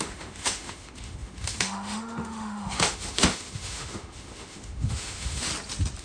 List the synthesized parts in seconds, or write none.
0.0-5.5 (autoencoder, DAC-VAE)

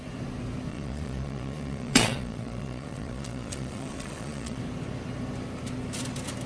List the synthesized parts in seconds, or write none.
0.7-4.6 (vocoder, Vocos)

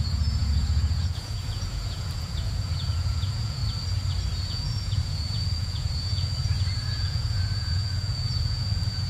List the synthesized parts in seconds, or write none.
0.0-3.6 (vocoder, Vocos); 4.3-9.1

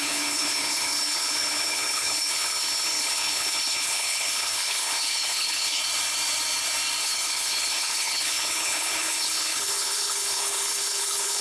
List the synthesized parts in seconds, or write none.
0.0-5.8 (codec, HILCodec); 7.0-11.4

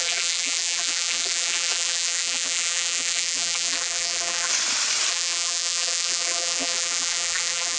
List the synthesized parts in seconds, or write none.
0.0-4.5 (vocoder, BigVGAN v2); 5.1-7.8